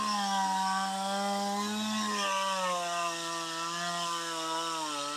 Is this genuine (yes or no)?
yes